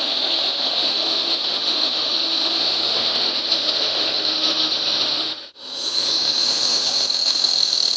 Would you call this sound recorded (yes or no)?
no